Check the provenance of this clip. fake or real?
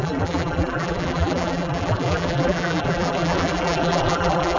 fake